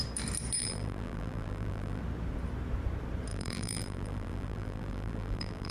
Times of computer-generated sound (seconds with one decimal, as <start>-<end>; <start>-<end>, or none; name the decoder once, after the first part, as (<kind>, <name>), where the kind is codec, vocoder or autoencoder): 0.6-2.0 (vocoder, BigVGAN v2); 3.3-5.7